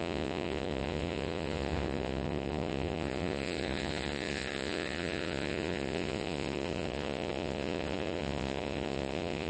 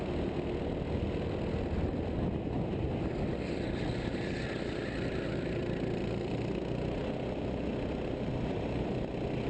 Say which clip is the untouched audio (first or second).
second